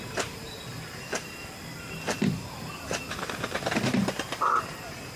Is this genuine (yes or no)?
no